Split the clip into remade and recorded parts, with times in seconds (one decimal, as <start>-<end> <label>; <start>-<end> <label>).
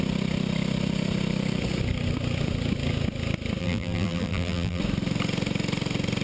0.0-3.6 recorded; 3.6-4.8 remade; 4.8-6.2 recorded